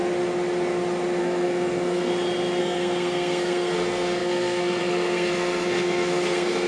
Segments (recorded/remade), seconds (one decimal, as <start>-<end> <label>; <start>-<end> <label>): 0.0-1.2 recorded; 1.2-2.1 remade; 2.1-2.6 recorded; 2.6-6.7 remade